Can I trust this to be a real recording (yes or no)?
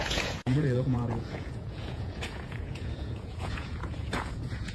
no